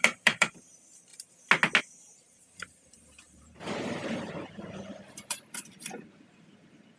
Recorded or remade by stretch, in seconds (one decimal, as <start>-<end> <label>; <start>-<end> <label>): 0.0-1.1 remade; 1.1-1.8 recorded; 1.8-7.0 remade